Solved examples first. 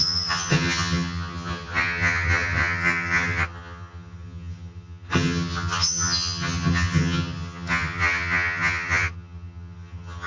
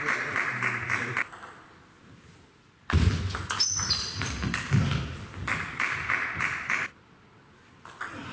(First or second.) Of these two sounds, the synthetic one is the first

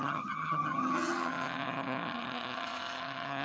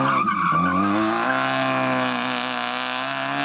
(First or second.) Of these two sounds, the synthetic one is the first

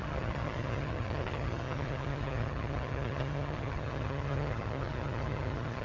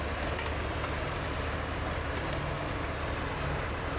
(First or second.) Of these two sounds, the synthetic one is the first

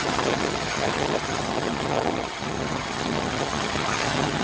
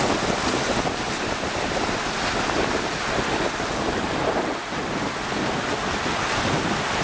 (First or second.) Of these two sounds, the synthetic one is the first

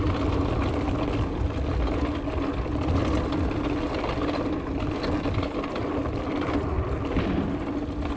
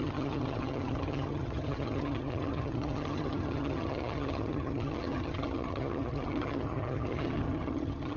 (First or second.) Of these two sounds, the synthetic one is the second